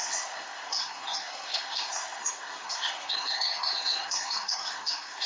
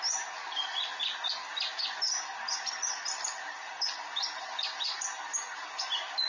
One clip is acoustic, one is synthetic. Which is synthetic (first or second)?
first